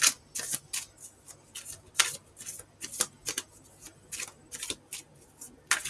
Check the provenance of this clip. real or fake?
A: real